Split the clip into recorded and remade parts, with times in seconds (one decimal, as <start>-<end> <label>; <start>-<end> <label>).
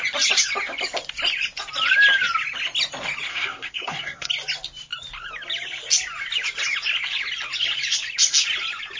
0.0-3.3 recorded; 3.3-4.3 remade; 4.3-9.0 recorded